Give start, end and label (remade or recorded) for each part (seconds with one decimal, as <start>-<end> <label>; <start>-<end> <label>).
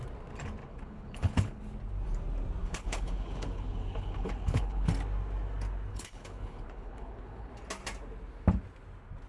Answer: 0.0-0.6 recorded; 0.6-1.6 remade; 1.6-2.6 recorded; 2.6-4.9 remade; 4.9-5.9 recorded; 5.9-7.5 remade; 7.5-9.3 recorded